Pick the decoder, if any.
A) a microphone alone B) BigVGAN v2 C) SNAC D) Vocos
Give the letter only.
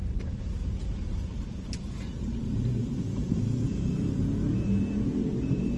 B